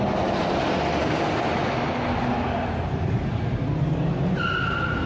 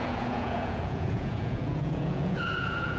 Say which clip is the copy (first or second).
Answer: second